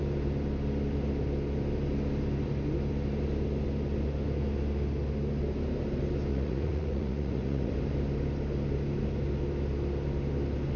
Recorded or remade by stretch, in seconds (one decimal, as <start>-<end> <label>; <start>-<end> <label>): 0.0-6.3 recorded; 6.3-7.7 remade; 7.7-10.8 recorded